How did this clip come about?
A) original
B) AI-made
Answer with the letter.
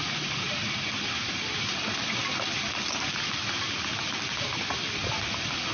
A